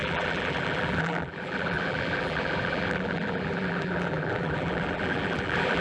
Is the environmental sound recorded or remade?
remade